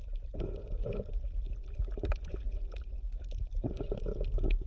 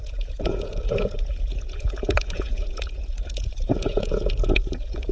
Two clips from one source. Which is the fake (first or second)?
second